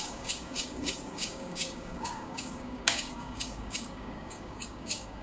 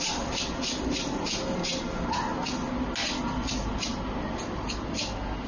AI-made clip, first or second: first